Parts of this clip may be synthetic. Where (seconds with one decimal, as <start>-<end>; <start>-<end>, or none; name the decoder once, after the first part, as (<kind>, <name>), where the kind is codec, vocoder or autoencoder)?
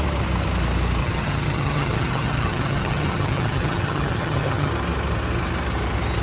1.0-4.7 (vocoder, HiFi-GAN)